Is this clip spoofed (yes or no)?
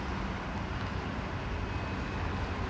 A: no